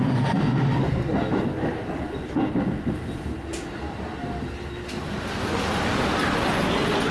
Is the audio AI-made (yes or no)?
no